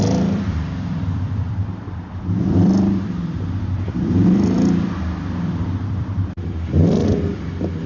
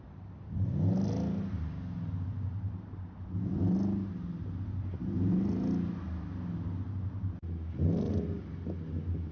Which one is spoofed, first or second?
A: first